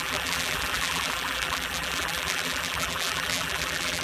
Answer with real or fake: fake